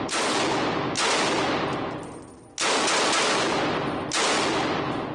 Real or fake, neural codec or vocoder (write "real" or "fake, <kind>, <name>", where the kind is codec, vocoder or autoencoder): real